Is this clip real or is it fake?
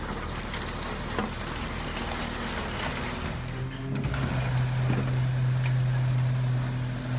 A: real